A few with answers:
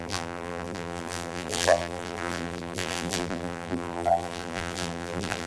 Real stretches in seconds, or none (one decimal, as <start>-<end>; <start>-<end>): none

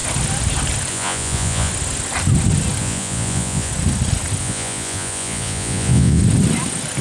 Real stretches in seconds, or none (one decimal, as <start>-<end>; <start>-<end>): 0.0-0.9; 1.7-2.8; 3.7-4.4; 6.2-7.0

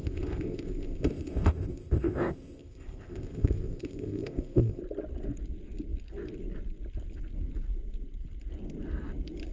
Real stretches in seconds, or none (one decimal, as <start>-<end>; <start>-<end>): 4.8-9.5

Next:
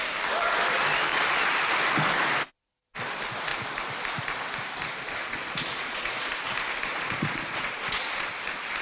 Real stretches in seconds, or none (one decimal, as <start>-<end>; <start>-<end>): 0.0-5.2; 6.4-6.9; 8.3-8.8

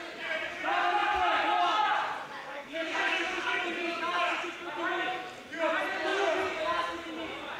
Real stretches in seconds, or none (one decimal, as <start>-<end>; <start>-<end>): 0.0-2.4; 3.6-7.6

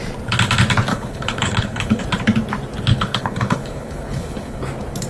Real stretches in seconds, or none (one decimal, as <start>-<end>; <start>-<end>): 0.0-0.9; 2.0-2.9; 4.6-5.1

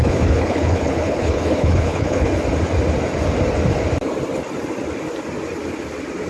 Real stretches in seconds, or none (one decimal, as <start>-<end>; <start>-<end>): 2.3-6.3

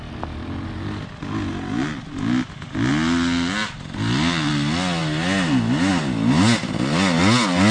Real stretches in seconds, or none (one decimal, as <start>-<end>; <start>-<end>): 0.0-7.7